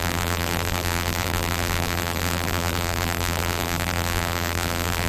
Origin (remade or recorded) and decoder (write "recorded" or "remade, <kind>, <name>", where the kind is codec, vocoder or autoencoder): remade, vocoder, BigVGAN v2